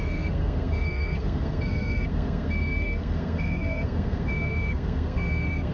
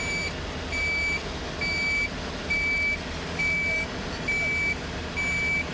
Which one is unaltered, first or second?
second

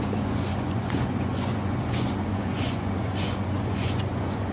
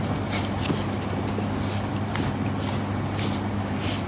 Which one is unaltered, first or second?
second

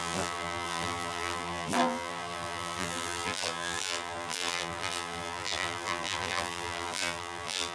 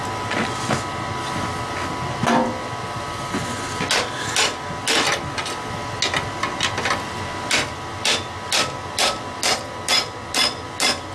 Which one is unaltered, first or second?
second